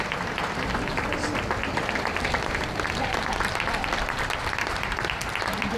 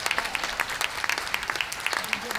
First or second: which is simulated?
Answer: first